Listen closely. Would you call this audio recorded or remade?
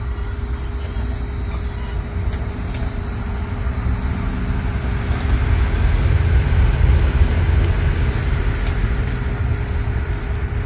recorded